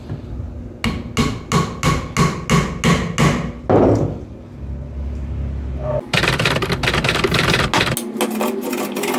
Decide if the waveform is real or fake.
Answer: real